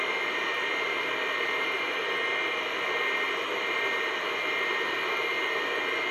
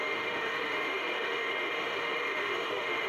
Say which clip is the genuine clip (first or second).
first